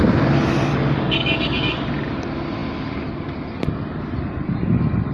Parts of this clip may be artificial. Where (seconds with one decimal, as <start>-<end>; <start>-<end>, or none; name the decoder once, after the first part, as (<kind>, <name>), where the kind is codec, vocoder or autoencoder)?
0.7-1.7 (codec, DAC)